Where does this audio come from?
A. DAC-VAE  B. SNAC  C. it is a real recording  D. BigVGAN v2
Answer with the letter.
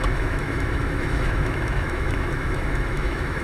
A